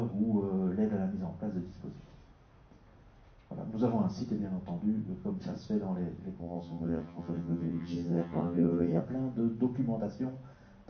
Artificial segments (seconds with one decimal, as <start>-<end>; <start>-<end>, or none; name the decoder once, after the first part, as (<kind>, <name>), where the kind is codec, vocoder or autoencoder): 6.4-9.0 (vocoder, HiFi-GAN)